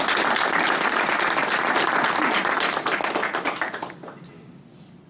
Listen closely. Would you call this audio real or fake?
real